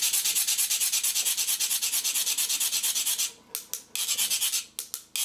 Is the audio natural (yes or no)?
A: yes